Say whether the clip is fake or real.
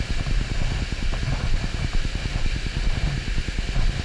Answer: real